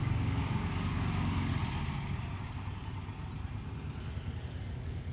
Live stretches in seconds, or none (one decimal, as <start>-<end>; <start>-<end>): 1.5-4.6